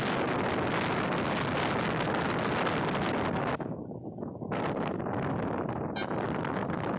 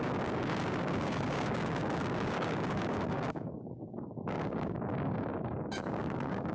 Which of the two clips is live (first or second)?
first